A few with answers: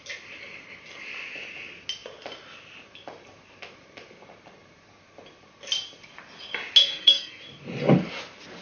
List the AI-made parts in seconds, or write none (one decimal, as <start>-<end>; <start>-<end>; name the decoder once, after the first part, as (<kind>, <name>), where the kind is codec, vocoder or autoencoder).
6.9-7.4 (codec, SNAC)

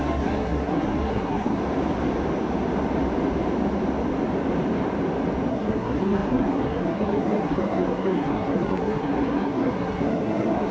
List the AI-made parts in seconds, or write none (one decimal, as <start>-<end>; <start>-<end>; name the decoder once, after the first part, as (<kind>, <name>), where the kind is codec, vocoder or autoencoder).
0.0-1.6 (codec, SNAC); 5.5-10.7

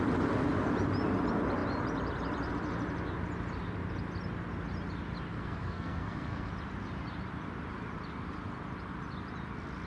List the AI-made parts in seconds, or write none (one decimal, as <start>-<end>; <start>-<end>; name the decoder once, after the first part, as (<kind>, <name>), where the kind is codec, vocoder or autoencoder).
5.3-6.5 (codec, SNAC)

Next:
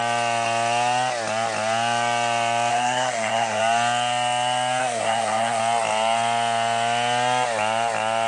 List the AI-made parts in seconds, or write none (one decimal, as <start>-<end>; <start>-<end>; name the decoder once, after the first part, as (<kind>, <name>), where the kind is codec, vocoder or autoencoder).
2.7-3.6 (codec, SNAC); 4.8-5.6

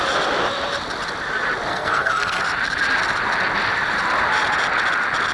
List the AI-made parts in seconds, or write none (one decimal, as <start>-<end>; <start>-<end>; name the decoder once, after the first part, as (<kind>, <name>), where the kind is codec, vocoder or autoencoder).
1.7-2.4 (codec, SNAC)

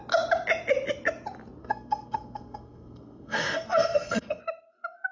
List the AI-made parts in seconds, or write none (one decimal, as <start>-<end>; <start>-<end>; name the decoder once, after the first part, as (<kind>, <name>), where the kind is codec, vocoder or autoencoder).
1.6-4.4 (codec, SNAC)

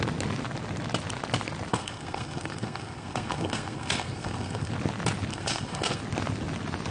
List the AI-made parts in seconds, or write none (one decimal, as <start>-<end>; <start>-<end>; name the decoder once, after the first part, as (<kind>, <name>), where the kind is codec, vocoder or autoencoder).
1.7-4.7 (codec, SNAC); 5.3-6.0

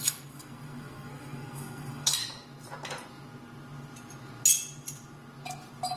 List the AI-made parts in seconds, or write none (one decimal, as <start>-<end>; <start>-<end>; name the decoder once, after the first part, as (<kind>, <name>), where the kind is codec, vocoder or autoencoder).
0.0-2.2 (codec, SNAC)